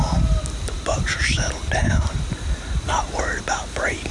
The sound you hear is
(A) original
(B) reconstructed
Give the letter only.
A